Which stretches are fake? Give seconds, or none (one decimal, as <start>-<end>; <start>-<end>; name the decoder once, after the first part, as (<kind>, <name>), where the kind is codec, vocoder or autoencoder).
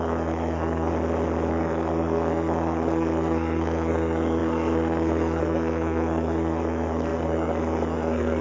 0.0-0.9 (codec, SNAC); 1.5-8.4